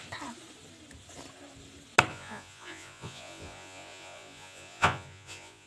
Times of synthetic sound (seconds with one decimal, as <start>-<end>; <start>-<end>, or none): 2.1-5.7